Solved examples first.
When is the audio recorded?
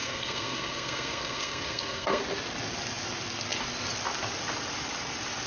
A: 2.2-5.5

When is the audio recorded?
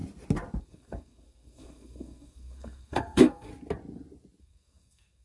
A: 0.0-0.6; 3.5-4.4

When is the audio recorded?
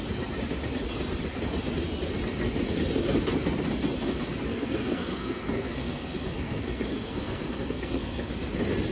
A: 0.0-4.5; 8.3-8.9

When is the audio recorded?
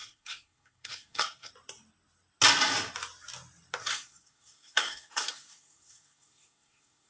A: 1.5-3.8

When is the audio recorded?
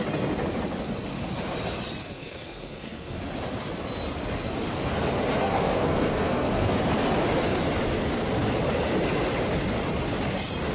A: 0.0-2.0; 3.2-5.4; 6.8-10.7